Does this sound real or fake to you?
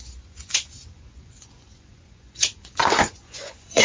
fake